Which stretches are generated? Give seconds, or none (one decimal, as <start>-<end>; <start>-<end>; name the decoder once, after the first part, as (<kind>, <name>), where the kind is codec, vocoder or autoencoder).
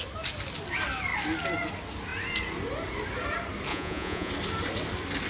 3.7-4.3 (vocoder, Vocos)